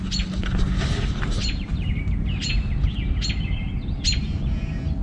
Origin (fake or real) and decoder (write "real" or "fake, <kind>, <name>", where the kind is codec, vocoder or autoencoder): real